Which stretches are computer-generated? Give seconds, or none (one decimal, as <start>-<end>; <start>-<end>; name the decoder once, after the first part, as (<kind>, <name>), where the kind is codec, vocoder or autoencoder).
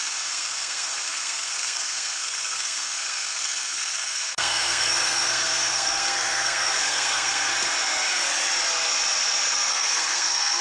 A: 0.0-7.5 (codec, SNAC); 9.7-10.6